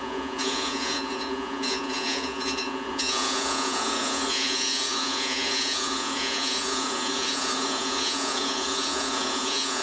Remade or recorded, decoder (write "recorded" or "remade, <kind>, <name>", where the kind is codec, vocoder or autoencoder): remade, vocoder, Vocos